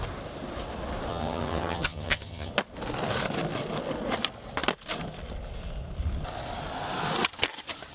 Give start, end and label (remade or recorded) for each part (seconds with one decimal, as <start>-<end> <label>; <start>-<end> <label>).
0.0-1.1 recorded; 1.1-2.5 remade; 2.5-7.9 recorded

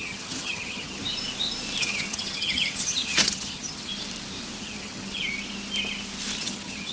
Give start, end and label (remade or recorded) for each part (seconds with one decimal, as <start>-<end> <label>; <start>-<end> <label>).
0.0-1.0 remade; 1.0-1.8 recorded; 1.8-3.9 remade; 3.9-4.6 recorded; 4.6-5.2 remade; 5.2-6.4 recorded; 6.4-6.9 remade

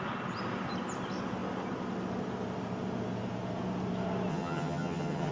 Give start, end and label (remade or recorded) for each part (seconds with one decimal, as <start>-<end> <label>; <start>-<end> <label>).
0.0-4.3 recorded; 4.3-5.3 remade

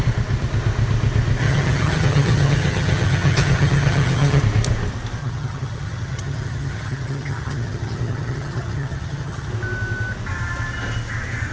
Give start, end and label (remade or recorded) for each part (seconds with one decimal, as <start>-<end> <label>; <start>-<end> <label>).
0.0-1.4 recorded; 1.4-4.4 remade; 4.4-5.2 recorded; 5.2-9.5 remade; 9.5-11.5 recorded

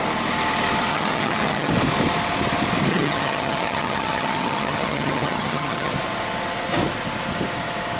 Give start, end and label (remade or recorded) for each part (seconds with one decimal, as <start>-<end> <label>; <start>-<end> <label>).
0.0-0.9 recorded; 0.9-1.7 remade; 1.7-2.9 recorded; 2.9-5.9 remade; 5.9-8.0 recorded

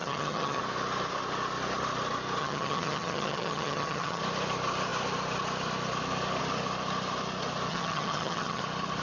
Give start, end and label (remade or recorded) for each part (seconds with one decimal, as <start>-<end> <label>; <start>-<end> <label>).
0.0-0.6 remade; 0.6-2.4 recorded; 2.4-4.2 remade; 4.2-7.7 recorded; 7.7-8.6 remade; 8.6-9.0 recorded

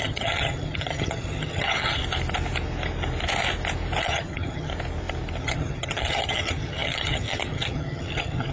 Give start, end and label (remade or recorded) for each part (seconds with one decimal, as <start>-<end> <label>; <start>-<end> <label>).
0.0-2.0 remade; 2.0-4.0 recorded; 4.0-4.7 remade; 4.7-5.4 recorded; 5.4-8.5 remade